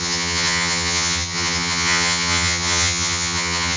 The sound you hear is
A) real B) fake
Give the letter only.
B